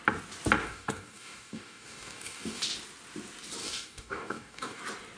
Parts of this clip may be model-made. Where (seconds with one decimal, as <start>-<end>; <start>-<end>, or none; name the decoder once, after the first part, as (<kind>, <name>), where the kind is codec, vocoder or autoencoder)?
0.6-2.6 (codec, DAC); 3.6-4.8